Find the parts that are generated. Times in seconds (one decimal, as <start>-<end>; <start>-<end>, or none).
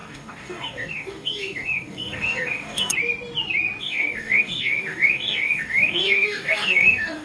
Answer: 0.0-2.9; 3.8-7.2